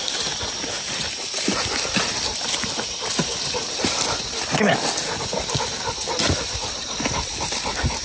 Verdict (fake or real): real